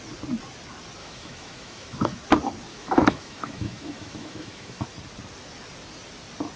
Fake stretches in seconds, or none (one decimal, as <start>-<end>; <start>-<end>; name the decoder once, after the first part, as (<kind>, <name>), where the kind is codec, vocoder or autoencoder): 1.0-2.2 (autoencoder, DAC-VAE); 2.7-4.9